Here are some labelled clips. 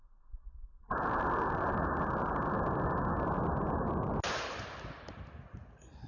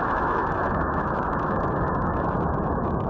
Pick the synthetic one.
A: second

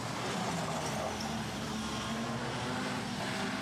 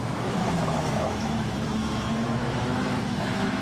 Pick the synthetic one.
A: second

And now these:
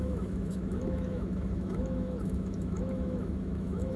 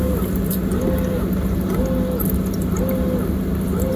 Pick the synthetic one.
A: first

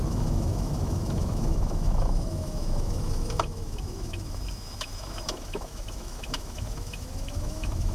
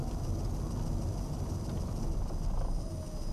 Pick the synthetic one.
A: first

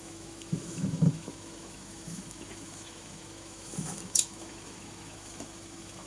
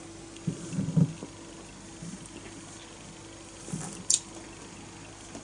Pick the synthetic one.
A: first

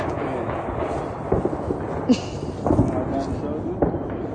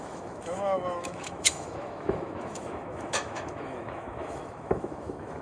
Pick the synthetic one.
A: second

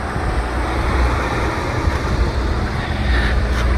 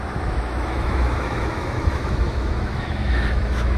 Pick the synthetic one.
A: second